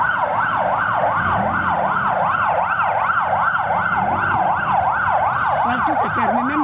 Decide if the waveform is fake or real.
real